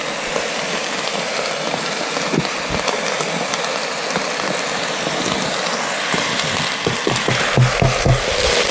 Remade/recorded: recorded